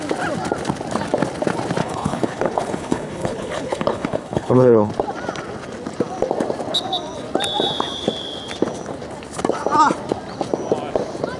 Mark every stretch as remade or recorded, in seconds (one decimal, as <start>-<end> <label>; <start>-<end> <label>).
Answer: 0.0-1.8 recorded; 1.8-4.9 remade; 4.9-11.4 recorded